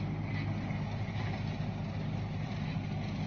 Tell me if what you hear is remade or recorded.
recorded